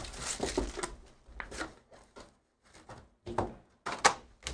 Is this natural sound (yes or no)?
yes